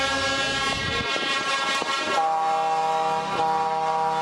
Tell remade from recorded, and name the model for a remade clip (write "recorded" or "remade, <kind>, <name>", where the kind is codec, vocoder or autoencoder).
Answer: recorded